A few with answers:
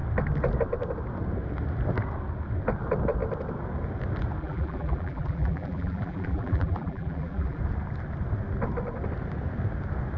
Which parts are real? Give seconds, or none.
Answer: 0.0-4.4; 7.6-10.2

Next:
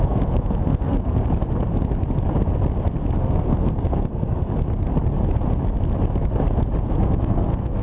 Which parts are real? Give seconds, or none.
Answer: 1.2-3.2; 4.5-7.0

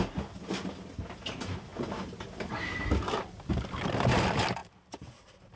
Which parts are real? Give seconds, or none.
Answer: 0.0-5.6